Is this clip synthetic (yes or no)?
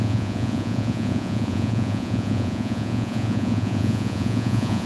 yes